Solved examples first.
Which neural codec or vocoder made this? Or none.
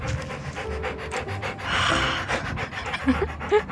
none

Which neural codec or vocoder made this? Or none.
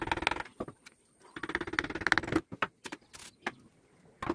none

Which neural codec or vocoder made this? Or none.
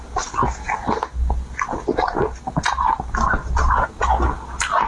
none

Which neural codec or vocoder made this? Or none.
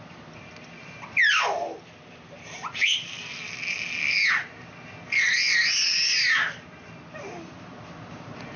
vocoder, BigVGAN v2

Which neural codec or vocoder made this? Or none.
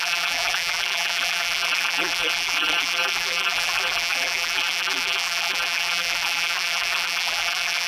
vocoder, BigVGAN v2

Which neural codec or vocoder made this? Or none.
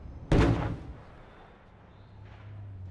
none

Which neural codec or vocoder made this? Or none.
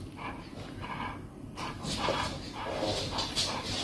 vocoder, BigVGAN v2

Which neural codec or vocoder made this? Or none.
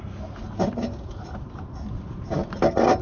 none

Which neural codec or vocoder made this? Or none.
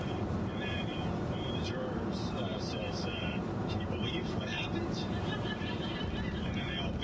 vocoder, BigVGAN v2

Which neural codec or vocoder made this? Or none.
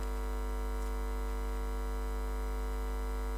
none